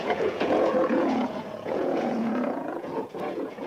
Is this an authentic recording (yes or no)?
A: no